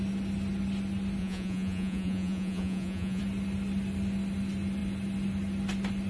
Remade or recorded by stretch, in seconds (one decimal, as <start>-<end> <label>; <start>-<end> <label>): 0.0-1.2 recorded; 1.2-3.2 remade; 3.2-6.1 recorded